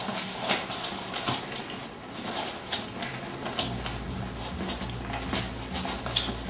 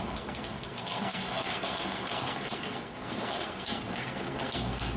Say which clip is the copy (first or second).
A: second